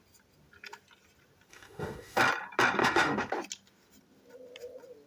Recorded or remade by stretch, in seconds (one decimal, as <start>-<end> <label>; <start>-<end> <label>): 0.0-1.5 recorded; 1.5-2.2 remade; 2.2-2.8 recorded; 2.8-3.3 remade; 3.3-5.1 recorded